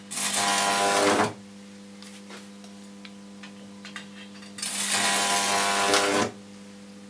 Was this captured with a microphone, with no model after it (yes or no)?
yes